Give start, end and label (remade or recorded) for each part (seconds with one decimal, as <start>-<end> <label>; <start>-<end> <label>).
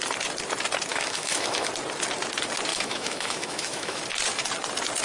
0.0-0.9 recorded; 0.9-1.7 remade; 1.7-2.7 recorded; 2.7-4.0 remade; 4.0-5.0 recorded